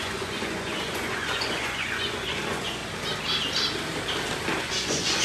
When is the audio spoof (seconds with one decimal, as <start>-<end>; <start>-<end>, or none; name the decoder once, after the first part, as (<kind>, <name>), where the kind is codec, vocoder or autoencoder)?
0.0-2.8 (vocoder, Vocos); 4.6-5.2